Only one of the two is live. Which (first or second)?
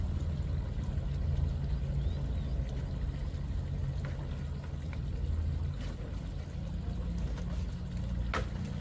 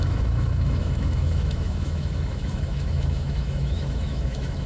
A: first